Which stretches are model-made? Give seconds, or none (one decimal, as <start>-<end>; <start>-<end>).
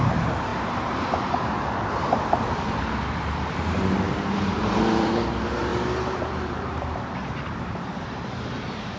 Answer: 0.0-9.0